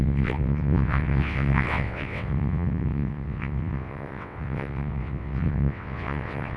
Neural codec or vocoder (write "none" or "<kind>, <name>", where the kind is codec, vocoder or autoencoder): vocoder, WaveNeXt